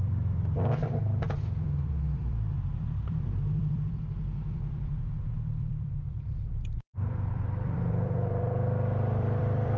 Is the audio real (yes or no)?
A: no